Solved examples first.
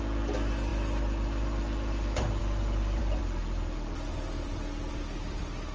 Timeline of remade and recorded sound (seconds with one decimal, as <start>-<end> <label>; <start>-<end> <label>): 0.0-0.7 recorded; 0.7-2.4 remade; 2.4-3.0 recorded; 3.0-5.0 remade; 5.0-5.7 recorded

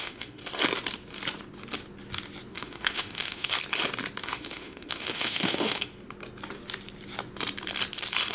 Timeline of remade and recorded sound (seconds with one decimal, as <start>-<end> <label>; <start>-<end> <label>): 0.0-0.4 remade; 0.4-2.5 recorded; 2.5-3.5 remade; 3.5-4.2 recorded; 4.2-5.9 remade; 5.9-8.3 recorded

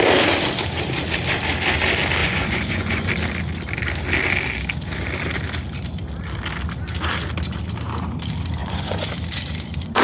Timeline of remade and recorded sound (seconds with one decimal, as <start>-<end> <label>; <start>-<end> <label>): 0.0-2.2 recorded; 2.2-3.1 remade; 3.1-8.6 recorded; 8.6-9.1 remade; 9.1-10.0 recorded